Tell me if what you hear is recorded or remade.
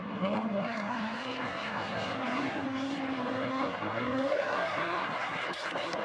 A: remade